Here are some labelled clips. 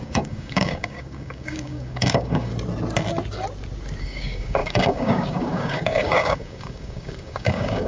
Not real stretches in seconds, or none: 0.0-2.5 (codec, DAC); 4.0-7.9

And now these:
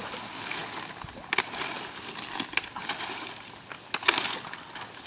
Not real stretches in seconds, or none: none

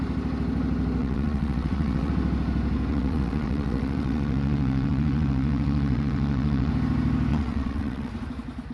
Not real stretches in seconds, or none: 1.0-2.1 (vocoder, WaveNeXt); 2.9-6.7; 7.3-8.1